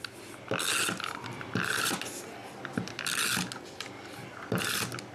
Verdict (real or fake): real